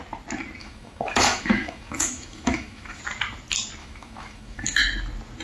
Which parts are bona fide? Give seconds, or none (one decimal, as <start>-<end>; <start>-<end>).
0.0-0.6; 3.0-3.8; 4.8-5.4

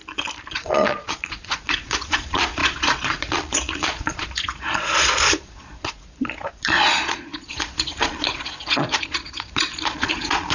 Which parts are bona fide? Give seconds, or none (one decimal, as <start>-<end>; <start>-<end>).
0.0-0.5

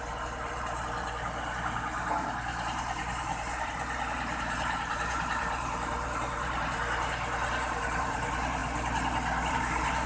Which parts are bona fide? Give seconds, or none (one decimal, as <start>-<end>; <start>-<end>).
8.6-9.5

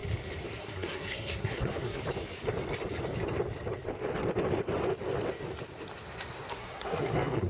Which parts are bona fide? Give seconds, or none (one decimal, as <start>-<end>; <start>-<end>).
0.0-0.6; 2.0-6.5

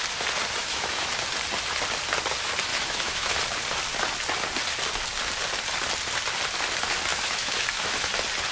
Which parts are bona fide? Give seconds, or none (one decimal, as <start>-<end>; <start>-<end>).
0.0-0.6; 1.1-2.7; 3.4-7.1; 8.1-8.5